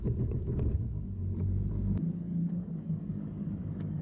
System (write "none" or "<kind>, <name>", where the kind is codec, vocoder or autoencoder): codec, DAC